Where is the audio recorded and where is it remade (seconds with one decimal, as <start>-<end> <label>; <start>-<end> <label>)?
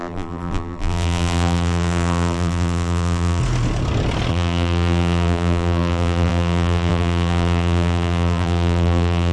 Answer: 0.0-3.4 remade; 3.4-4.3 recorded; 4.3-9.3 remade